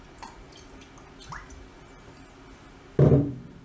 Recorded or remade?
recorded